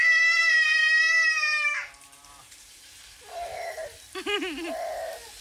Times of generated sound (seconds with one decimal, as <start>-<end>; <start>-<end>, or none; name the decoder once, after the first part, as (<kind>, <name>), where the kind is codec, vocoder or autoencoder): 0.8-4.0 (vocoder, BigVGAN v2)